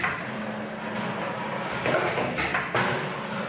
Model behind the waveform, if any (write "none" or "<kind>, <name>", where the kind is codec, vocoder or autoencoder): none